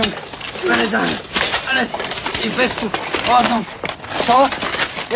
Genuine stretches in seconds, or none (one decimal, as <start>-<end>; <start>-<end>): 0.0-1.5; 2.5-3.5